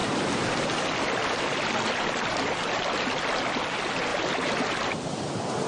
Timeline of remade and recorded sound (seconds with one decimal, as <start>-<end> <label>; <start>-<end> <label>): 0.0-3.4 remade; 3.4-4.1 recorded; 4.1-5.7 remade